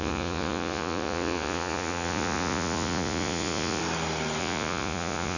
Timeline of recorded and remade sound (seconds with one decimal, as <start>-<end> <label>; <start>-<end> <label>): 0.0-3.8 remade; 3.8-4.4 recorded; 4.4-5.4 remade